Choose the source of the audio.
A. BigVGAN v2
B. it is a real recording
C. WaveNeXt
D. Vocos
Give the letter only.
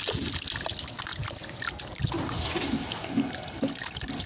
B